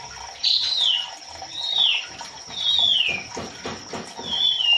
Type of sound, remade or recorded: recorded